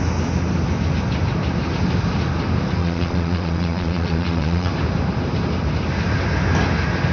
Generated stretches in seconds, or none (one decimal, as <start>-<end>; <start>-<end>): 2.8-4.7